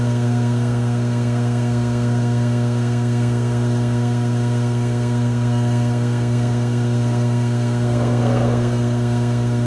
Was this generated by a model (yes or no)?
yes